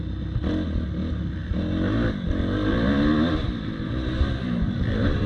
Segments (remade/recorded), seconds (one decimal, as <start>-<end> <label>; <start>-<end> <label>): 0.0-5.3 recorded